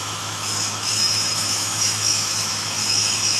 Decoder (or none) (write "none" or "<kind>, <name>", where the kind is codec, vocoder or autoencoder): autoencoder, DAC-VAE